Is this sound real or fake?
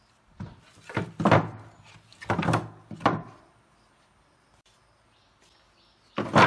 real